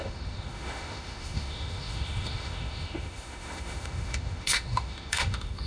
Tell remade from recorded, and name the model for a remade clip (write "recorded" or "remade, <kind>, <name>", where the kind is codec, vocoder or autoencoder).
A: remade, autoencoder, DAC-VAE